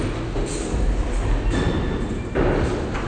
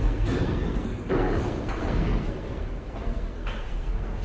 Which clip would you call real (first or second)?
first